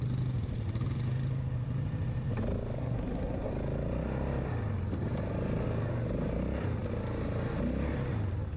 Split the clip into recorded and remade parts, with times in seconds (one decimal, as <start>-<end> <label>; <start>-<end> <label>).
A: 0.0-2.8 recorded; 2.8-3.5 remade; 3.5-8.6 recorded